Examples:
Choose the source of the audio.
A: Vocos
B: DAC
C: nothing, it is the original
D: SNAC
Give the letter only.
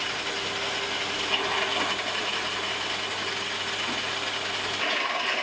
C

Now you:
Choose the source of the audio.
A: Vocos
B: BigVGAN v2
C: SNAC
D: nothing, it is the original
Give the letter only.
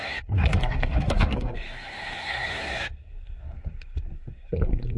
C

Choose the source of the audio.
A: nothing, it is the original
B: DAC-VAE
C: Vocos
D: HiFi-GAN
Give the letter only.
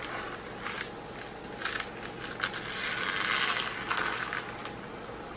A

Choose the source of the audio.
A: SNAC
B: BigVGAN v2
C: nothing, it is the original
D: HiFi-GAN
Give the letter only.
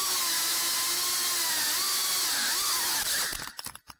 C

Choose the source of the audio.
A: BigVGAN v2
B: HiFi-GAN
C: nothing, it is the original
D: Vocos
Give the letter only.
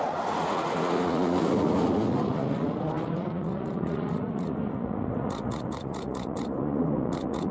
D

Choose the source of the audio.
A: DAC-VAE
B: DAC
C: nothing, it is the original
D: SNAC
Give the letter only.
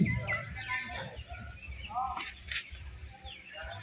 C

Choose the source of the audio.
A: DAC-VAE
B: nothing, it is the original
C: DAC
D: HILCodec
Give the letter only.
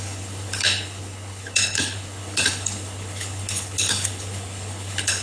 D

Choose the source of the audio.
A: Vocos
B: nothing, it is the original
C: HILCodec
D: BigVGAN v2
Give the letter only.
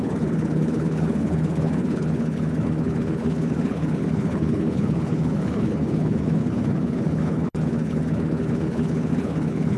C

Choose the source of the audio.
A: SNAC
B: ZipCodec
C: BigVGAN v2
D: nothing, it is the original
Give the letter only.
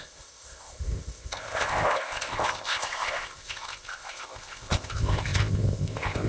B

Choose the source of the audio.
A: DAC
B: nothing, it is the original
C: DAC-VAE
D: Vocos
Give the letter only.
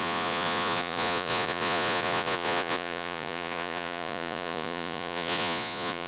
D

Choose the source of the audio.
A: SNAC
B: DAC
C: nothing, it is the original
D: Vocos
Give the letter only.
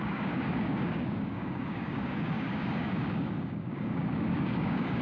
B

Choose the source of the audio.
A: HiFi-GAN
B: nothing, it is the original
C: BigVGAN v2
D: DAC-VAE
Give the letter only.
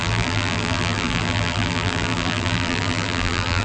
C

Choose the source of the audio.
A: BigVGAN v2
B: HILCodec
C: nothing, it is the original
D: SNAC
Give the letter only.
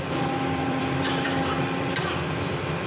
A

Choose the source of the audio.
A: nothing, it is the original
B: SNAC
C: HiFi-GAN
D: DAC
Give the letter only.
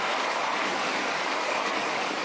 D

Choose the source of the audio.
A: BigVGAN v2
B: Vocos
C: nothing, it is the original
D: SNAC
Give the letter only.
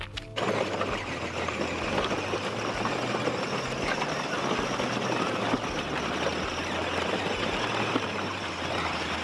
C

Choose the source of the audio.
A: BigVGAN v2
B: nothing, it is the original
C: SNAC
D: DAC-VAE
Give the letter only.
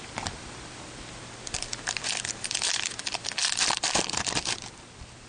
B